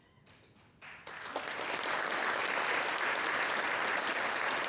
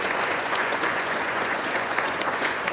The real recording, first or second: first